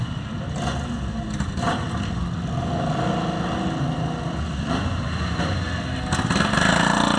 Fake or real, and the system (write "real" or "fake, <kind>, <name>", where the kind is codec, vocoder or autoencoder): real